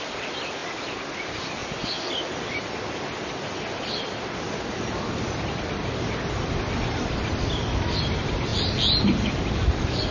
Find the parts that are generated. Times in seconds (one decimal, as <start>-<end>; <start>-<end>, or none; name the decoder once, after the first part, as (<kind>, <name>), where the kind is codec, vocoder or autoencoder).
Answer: 0.0-0.6 (vocoder, BigVGAN v2); 1.2-1.6; 4.7-10.1